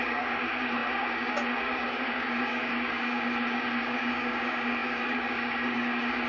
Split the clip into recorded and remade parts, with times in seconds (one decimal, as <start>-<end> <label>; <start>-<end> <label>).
0.0-6.3 remade